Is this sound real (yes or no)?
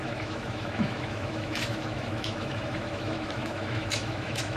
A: no